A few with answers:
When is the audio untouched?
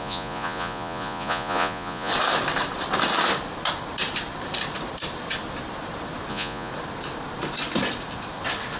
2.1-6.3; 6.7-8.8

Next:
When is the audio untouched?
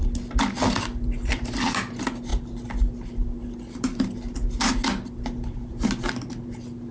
0.0-6.9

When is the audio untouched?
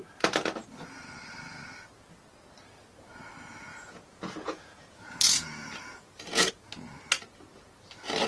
0.0-3.7; 6.5-8.3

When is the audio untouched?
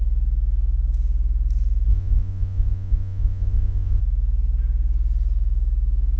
0.0-1.9; 4.0-6.2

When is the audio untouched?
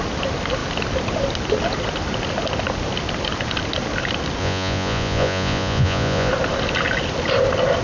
0.0-4.4; 6.3-7.8